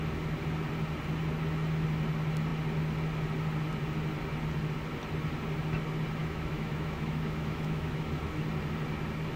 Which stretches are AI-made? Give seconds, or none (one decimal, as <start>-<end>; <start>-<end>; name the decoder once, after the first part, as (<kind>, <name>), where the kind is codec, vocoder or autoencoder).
6.2-8.4 (autoencoder, DAC-VAE)